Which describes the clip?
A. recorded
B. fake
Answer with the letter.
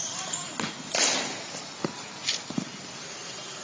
A